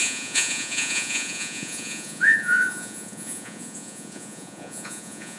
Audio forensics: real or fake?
fake